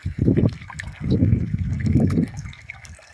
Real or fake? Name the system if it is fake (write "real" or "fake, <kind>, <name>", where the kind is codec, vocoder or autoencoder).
fake, codec, SNAC